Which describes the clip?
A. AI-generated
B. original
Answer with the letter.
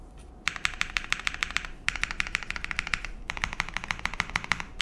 A